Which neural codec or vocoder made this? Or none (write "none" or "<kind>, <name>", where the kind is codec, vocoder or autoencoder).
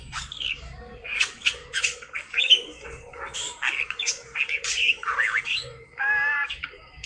codec, DAC